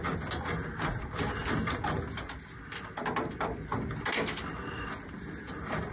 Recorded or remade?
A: recorded